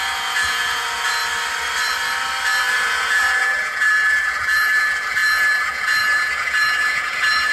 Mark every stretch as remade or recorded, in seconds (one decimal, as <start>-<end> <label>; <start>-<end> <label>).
0.0-1.2 remade; 1.2-2.7 recorded; 2.7-7.5 remade